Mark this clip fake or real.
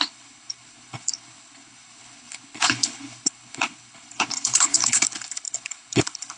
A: fake